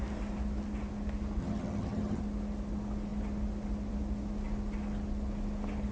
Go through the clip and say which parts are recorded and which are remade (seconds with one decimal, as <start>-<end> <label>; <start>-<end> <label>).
0.0-1.4 recorded; 1.4-2.2 remade; 2.2-5.9 recorded